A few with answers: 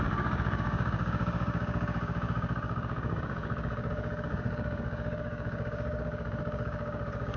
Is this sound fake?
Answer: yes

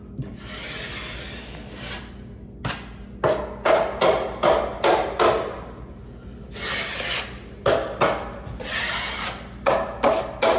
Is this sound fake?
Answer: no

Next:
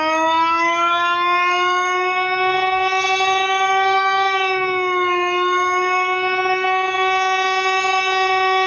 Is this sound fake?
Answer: yes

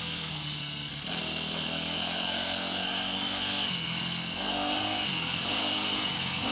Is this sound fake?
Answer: yes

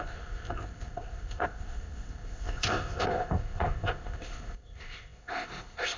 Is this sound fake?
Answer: yes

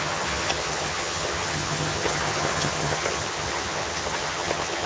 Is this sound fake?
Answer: yes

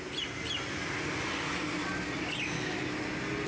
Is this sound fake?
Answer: no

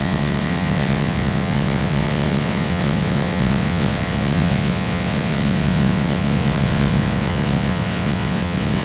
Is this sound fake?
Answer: yes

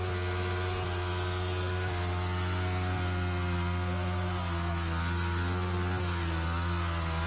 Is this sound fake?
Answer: no